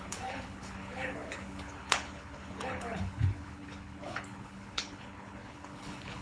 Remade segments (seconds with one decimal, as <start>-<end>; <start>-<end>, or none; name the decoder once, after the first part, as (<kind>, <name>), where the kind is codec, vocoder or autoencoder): 0.0-6.2 (codec, HILCodec)